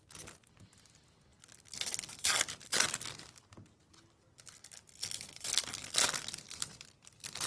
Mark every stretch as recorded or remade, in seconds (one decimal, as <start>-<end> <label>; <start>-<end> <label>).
0.0-7.5 recorded